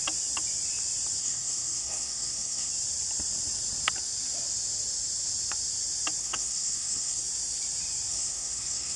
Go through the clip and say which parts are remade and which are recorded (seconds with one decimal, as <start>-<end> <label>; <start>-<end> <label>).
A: 0.0-1.2 recorded; 1.2-2.7 remade; 2.7-6.2 recorded; 6.2-7.2 remade; 7.2-8.1 recorded; 8.1-9.0 remade